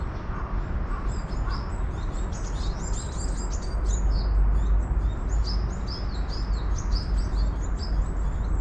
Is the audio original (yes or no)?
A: yes